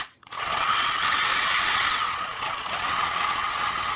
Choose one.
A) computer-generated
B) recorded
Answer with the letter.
A